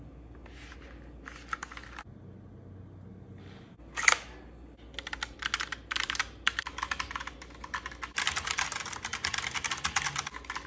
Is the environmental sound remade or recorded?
recorded